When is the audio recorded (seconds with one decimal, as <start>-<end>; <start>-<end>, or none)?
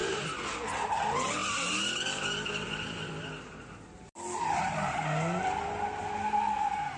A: 0.5-7.0